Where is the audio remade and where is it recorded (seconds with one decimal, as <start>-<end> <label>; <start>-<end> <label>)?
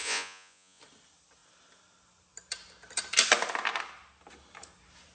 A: 0.0-0.8 remade; 0.8-5.1 recorded